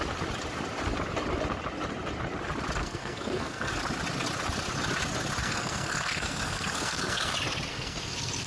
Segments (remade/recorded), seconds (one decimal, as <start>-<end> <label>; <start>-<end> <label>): 0.0-2.8 recorded; 2.8-3.7 remade; 3.7-5.4 recorded; 5.4-7.3 remade; 7.3-7.7 recorded; 7.7-8.5 remade